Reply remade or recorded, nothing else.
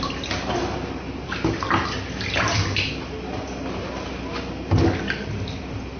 recorded